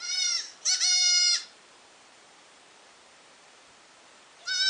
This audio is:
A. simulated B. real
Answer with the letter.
A